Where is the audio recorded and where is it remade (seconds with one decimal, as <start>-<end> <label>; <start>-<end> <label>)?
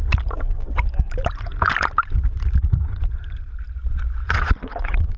0.0-4.2 recorded; 4.2-5.2 remade